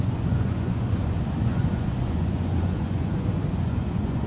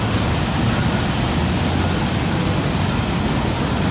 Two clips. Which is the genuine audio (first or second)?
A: second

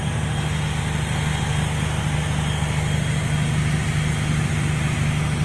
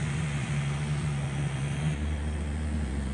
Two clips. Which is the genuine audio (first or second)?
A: first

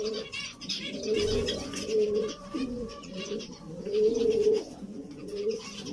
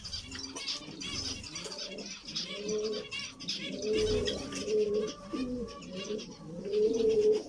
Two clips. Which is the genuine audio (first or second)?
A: second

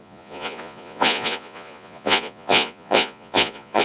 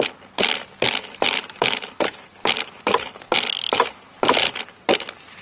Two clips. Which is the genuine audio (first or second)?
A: second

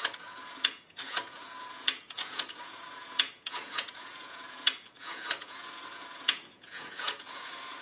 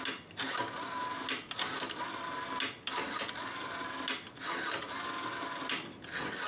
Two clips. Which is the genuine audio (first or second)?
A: second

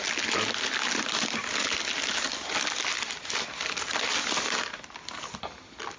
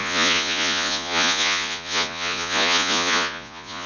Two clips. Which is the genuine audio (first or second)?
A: first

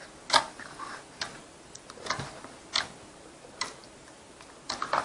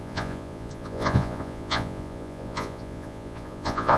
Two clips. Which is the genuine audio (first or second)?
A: first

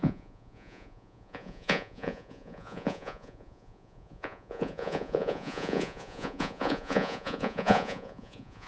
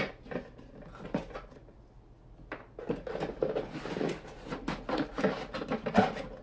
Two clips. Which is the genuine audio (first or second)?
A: second